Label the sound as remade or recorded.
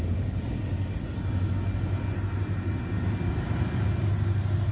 recorded